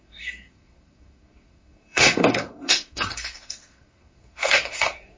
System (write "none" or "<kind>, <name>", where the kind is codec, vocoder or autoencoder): codec, SNAC